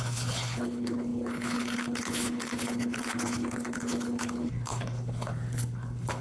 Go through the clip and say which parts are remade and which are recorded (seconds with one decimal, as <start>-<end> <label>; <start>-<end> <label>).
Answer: 0.0-6.2 remade

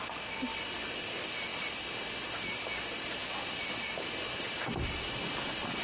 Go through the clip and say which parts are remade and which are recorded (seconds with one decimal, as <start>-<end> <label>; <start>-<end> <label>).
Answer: 0.0-5.8 recorded

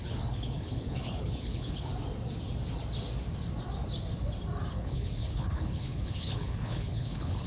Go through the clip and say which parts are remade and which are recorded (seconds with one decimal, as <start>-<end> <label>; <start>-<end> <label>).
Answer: 0.0-1.9 remade; 1.9-4.7 recorded; 4.7-7.5 remade

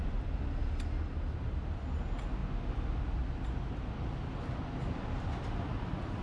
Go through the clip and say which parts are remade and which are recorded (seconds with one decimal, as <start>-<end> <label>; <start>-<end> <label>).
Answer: 0.0-6.2 recorded

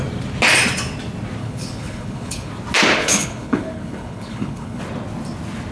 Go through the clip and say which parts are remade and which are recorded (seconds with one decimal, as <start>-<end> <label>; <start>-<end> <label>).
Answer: 0.0-1.4 recorded; 1.4-2.5 remade; 2.5-3.0 recorded; 3.0-4.8 remade; 4.8-5.7 recorded

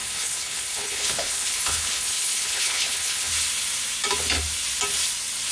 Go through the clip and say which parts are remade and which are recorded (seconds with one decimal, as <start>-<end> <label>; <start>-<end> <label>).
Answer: 0.0-3.3 remade; 3.3-5.5 recorded

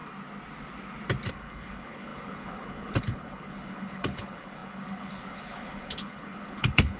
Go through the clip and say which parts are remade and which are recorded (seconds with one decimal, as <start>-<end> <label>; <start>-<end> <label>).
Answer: 0.0-1.3 recorded; 1.3-7.0 remade

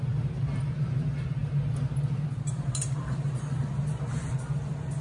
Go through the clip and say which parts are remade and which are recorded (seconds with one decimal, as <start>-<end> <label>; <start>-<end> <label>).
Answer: 0.0-5.0 recorded